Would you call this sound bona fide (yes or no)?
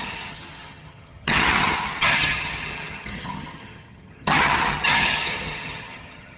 no